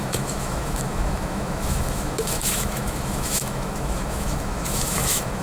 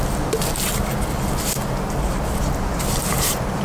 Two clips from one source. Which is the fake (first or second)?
first